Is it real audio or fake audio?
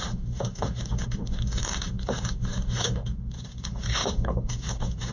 fake